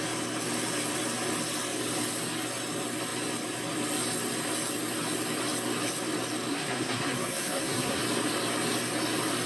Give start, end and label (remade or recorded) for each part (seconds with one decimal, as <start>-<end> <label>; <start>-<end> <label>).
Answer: 0.0-6.5 recorded; 6.5-8.0 remade; 8.0-9.5 recorded